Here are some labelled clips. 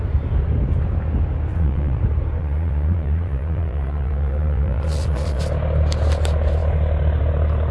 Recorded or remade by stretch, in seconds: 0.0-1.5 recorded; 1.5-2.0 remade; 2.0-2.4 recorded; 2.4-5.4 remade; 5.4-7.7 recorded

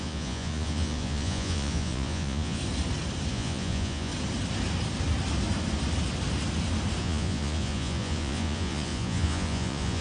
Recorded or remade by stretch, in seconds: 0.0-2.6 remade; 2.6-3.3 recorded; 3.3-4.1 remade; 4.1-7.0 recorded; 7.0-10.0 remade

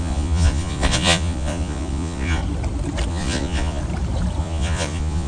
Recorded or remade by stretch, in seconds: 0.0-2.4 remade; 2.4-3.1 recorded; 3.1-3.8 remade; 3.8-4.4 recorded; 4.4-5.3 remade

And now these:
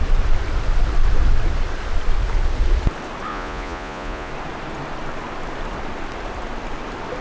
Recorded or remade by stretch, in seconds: 0.0-3.3 recorded; 3.3-4.3 remade; 4.3-7.2 recorded